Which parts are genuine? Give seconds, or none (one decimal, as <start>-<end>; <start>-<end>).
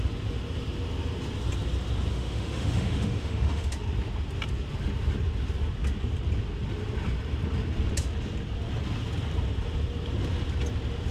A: 0.0-2.1; 3.7-11.1